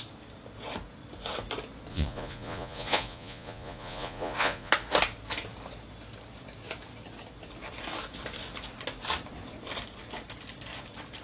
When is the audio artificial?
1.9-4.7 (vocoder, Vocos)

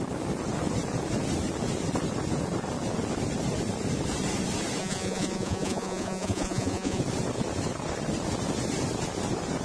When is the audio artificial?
4.8-7.0 (vocoder, Vocos)

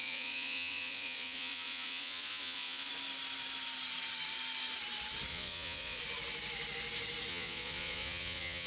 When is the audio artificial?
0.0-2.9 (vocoder, Vocos); 5.3-6.0; 7.3-8.7

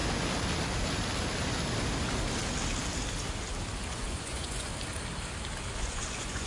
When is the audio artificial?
3.9-4.7 (vocoder, Vocos); 5.8-6.5

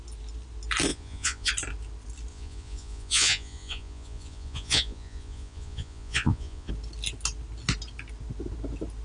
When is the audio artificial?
0.9-1.5 (vocoder, Vocos); 2.3-6.7